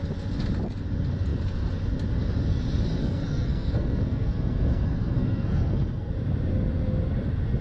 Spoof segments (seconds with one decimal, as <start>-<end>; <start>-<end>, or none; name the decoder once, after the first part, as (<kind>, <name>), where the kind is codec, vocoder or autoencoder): 3.0-6.1 (codec, SNAC)